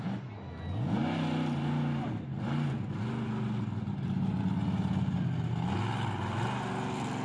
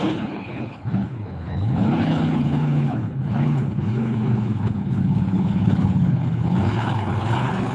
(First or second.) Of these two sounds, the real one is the first